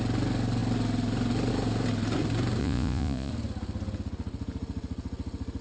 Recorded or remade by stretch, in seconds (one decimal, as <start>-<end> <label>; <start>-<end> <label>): 0.0-2.6 recorded; 2.6-3.3 remade; 3.3-5.6 recorded